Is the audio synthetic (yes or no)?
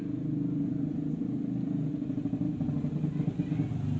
no